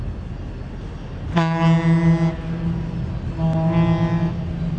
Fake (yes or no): no